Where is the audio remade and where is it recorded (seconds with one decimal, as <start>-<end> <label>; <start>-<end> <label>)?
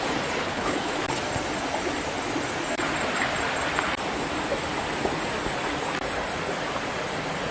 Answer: 0.0-0.4 recorded; 0.4-1.0 remade; 1.0-7.5 recorded